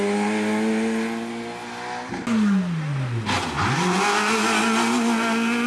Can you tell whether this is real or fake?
real